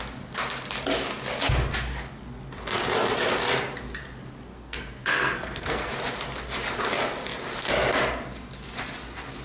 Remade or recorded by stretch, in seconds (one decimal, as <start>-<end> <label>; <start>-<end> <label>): 0.0-4.5 recorded; 4.5-5.9 remade; 5.9-9.4 recorded